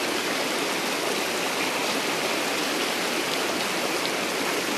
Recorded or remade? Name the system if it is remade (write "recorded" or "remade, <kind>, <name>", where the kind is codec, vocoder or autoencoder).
recorded